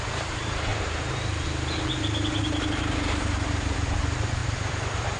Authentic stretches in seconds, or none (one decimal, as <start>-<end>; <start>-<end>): 0.7-2.4